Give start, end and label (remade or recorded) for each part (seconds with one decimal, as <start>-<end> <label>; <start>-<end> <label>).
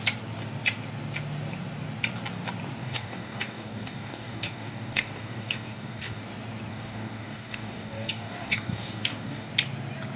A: 0.0-2.8 recorded; 2.8-6.2 remade; 6.2-6.7 recorded; 6.7-9.5 remade; 9.5-10.2 recorded